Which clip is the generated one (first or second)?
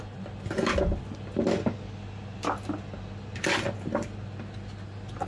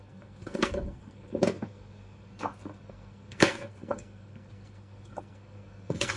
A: second